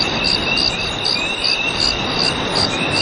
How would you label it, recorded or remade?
recorded